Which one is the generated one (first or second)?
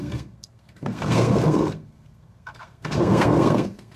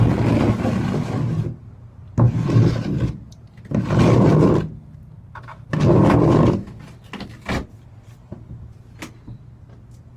first